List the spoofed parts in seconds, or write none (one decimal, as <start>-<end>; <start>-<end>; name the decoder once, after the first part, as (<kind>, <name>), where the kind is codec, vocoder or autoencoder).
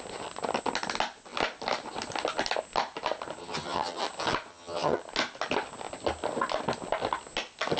3.4-4.0 (vocoder, HiFi-GAN); 4.5-5.0